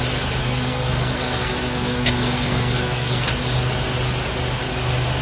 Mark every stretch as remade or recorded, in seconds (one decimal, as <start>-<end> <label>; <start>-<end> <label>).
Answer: 0.0-0.4 recorded; 0.4-3.3 remade; 3.3-5.2 recorded